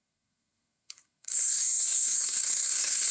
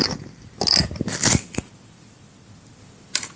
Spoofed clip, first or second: first